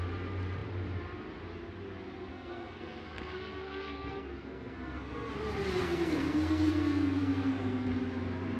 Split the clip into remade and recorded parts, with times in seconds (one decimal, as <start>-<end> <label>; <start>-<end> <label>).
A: 0.0-2.3 recorded; 2.3-5.3 remade; 5.3-5.8 recorded; 5.8-7.9 remade; 7.9-8.6 recorded